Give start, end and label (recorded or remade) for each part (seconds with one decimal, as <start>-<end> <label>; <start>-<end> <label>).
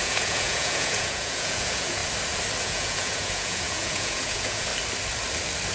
0.0-2.0 remade; 2.0-2.6 recorded; 2.6-4.7 remade; 4.7-5.7 recorded